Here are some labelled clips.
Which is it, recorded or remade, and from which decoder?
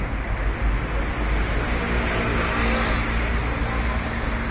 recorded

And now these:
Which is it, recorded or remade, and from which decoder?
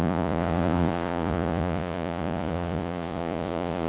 remade, vocoder, Vocos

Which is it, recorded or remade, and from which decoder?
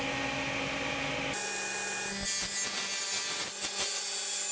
recorded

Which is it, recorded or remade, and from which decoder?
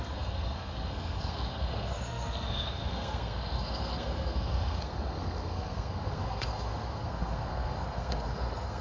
remade, codec, SNAC